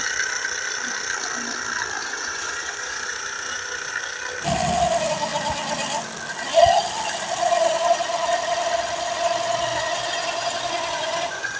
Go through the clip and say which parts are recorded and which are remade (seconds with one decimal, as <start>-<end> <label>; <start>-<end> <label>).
0.0-2.0 recorded; 2.0-3.9 remade; 3.9-9.7 recorded; 9.7-11.6 remade